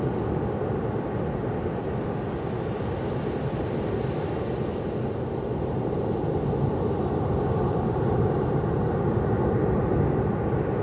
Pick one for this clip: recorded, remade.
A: recorded